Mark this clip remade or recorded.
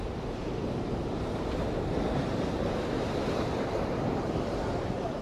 remade